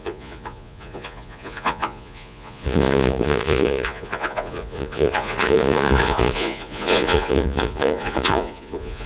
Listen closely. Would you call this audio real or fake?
fake